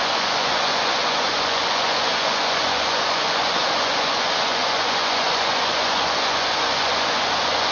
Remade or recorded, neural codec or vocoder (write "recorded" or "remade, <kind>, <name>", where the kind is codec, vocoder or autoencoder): remade, vocoder, Vocos